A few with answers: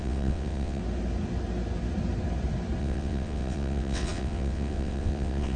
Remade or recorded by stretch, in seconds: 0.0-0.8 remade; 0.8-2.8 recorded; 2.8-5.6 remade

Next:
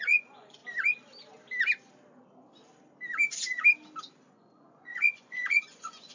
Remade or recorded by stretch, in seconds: 0.0-0.6 remade; 0.6-4.3 recorded; 4.3-6.1 remade

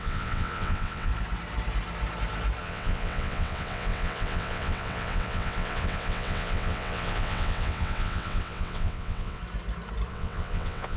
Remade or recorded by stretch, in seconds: 0.0-1.1 remade; 1.1-2.6 recorded; 2.6-9.4 remade; 9.4-10.1 recorded; 10.1-11.0 remade

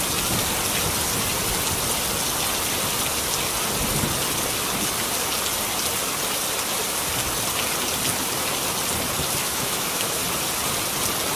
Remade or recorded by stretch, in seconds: 0.0-9.4 recorded; 9.4-10.2 remade; 10.2-11.4 recorded